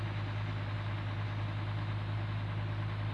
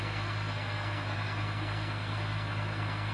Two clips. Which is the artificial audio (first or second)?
second